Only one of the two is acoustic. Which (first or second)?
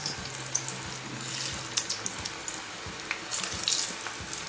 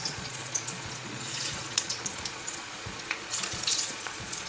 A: first